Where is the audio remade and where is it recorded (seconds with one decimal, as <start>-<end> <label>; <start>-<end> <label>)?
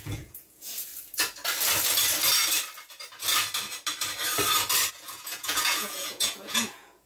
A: 0.0-0.9 remade; 0.9-4.9 recorded; 4.9-7.1 remade